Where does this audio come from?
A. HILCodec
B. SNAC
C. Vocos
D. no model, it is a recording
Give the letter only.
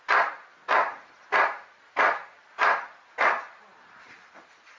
D